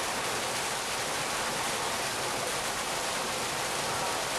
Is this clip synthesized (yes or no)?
no